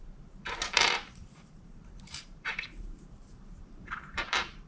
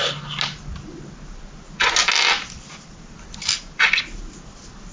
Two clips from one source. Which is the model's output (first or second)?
first